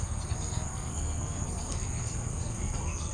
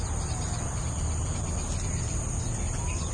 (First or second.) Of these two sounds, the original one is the second